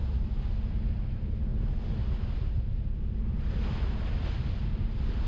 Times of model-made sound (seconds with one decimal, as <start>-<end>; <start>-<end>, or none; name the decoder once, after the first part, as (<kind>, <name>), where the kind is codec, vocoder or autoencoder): none